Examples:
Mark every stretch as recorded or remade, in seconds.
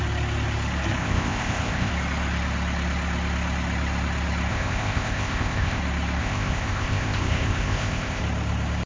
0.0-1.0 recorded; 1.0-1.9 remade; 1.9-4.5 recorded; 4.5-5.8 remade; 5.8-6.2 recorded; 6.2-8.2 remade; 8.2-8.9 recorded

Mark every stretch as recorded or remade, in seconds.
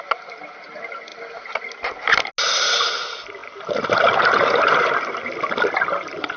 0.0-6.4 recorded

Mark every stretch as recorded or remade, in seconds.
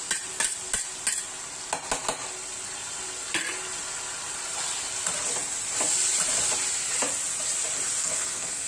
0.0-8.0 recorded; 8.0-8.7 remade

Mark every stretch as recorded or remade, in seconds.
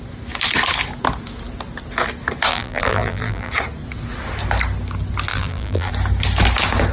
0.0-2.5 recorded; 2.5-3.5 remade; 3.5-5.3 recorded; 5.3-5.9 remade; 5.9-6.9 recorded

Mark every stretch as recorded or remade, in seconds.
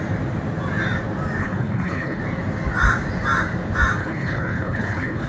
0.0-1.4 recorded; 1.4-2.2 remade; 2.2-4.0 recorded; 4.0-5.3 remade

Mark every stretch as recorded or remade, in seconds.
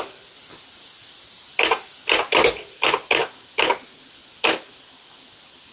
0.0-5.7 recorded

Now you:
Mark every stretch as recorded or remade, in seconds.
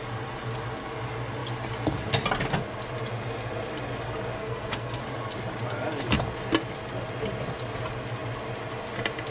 0.0-4.4 recorded; 4.4-5.0 remade; 5.0-9.3 recorded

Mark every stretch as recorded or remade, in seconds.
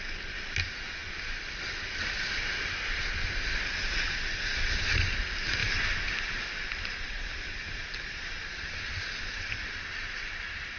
0.0-10.8 recorded